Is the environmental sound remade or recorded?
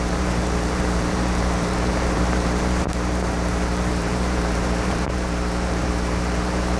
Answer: remade